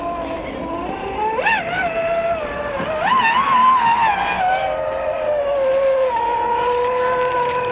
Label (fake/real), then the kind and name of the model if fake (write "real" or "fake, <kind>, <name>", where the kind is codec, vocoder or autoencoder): real